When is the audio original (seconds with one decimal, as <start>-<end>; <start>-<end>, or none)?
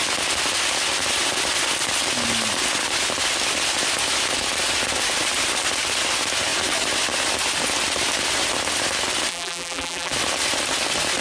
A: 0.0-9.3; 10.1-11.2